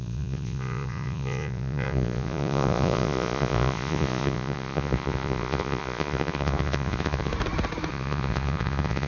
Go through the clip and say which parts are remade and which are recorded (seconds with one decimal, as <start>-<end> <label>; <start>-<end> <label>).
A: 0.0-7.3 remade; 7.3-7.9 recorded; 7.9-9.1 remade